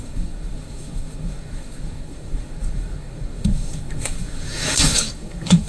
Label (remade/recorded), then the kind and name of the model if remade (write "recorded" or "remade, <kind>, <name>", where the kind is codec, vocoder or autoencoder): remade, codec, SNAC